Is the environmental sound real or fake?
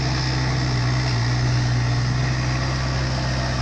real